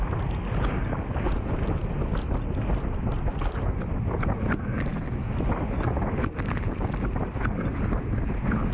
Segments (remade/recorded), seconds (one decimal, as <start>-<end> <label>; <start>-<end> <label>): 0.0-8.7 recorded